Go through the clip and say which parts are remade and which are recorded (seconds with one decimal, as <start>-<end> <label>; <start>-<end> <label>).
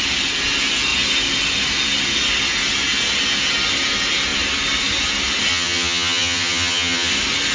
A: 0.0-5.5 recorded; 5.5-7.1 remade; 7.1-7.5 recorded